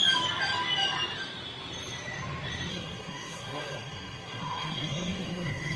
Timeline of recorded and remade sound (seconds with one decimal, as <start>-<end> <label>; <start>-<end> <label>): 0.0-2.7 recorded; 2.7-5.8 remade